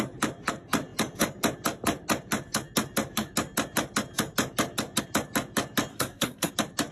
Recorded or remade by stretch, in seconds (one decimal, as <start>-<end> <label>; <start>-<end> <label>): 0.0-5.9 recorded; 5.9-6.5 remade; 6.5-6.9 recorded